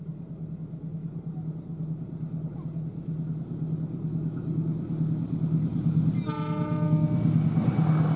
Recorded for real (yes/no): yes